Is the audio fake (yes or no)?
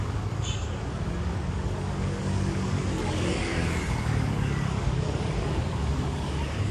yes